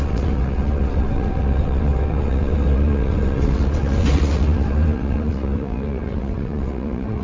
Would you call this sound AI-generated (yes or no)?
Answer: yes